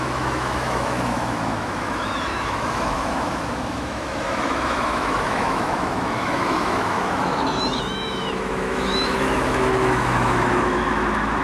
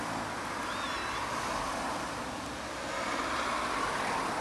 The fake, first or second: first